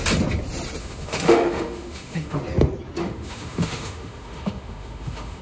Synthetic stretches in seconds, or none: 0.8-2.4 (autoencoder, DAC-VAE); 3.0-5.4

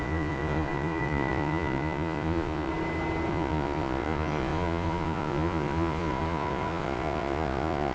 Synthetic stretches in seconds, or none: 0.0-2.7 (vocoder, Vocos); 3.3-7.9

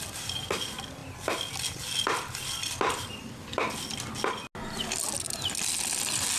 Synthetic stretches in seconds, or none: none

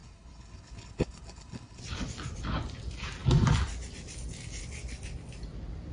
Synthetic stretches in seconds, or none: 0.0-1.8 (codec, HILCodec)

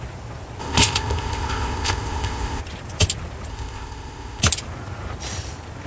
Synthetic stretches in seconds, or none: 0.6-2.6 (codec, ZipCodec); 3.5-4.4

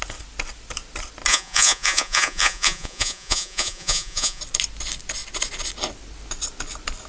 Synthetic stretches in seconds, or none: 1.3-4.4 (vocoder, Vocos)

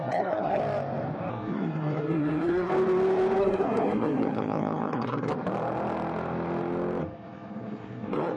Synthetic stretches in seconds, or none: 0.0-0.6 (codec, SNAC); 1.3-2.7; 3.4-5.3; 7.0-8.4

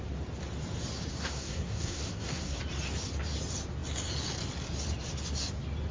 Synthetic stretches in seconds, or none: 1.1-2.6 (codec, SNAC)